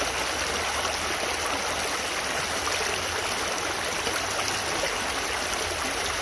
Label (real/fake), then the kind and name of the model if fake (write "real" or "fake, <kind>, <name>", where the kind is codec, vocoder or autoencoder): real